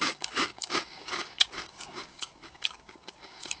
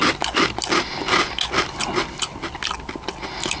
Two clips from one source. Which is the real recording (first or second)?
second